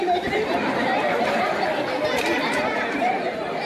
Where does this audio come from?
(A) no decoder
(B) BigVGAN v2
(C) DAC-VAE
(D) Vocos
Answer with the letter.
A